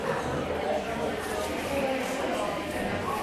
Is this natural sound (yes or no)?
yes